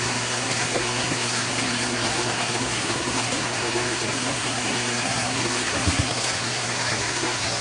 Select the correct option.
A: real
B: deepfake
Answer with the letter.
B